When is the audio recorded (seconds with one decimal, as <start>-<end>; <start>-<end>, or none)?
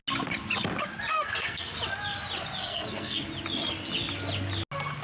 0.0-1.1; 1.7-2.6; 3.2-5.0